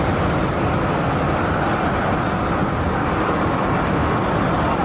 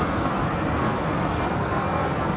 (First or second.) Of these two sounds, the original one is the first